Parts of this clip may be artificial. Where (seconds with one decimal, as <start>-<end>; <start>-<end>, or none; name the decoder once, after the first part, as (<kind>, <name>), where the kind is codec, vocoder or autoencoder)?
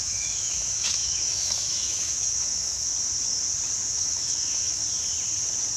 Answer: 0.0-2.9 (autoencoder, DAC-VAE); 3.9-4.8